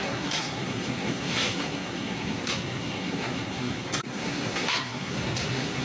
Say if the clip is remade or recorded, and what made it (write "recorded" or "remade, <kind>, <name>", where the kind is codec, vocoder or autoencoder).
remade, codec, SNAC